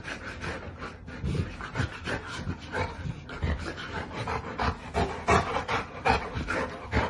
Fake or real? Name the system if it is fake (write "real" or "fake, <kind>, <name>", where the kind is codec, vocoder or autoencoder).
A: real